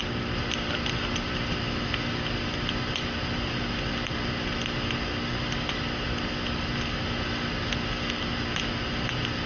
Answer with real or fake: real